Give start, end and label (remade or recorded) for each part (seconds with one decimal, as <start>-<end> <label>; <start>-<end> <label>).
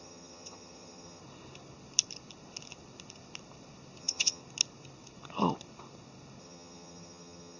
0.0-1.2 remade; 1.2-4.0 recorded; 4.0-4.4 remade; 4.4-6.4 recorded; 6.4-7.6 remade